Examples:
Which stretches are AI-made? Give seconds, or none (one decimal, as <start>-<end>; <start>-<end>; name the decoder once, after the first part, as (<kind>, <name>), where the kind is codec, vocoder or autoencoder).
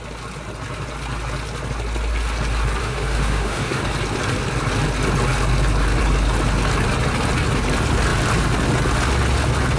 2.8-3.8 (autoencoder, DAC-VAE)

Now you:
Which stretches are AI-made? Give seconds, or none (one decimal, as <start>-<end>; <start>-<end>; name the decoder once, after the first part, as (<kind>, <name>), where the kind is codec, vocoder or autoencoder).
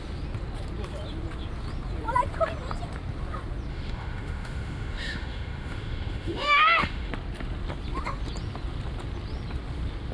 3.7-7.1 (autoencoder, DAC-VAE)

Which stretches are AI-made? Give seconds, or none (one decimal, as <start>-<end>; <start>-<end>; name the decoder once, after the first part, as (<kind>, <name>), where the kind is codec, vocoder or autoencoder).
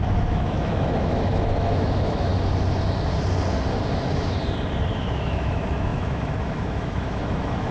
0.0-2.3 (autoencoder, DAC-VAE); 4.9-7.7